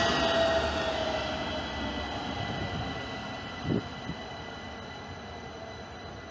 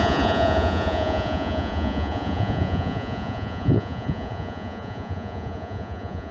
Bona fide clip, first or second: first